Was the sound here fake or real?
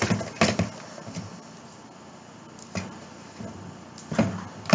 real